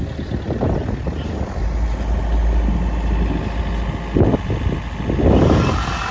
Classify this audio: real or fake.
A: real